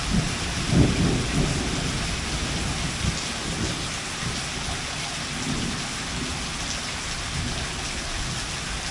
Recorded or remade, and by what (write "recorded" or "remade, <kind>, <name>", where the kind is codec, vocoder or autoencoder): recorded